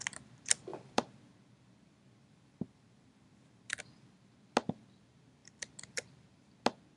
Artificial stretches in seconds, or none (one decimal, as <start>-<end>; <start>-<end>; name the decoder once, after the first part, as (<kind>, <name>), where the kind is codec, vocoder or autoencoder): 0.7-1.2 (vocoder, BigVGAN v2); 2.2-3.8; 5.4-6.1